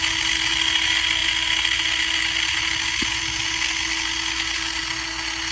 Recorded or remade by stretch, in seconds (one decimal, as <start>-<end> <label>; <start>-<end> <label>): 0.0-5.5 recorded